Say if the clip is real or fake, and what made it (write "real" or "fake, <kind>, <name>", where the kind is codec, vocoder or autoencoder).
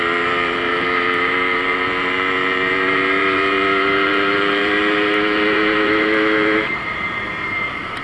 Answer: fake, vocoder, BigVGAN v2